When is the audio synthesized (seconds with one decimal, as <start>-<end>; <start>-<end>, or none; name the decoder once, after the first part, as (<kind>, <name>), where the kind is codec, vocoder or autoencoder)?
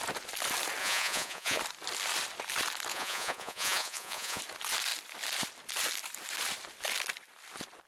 0.8-1.6 (vocoder, Vocos); 2.9-4.4